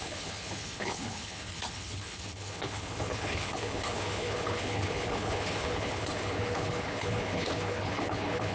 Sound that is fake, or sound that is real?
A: fake